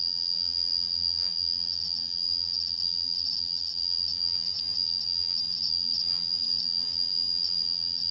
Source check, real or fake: fake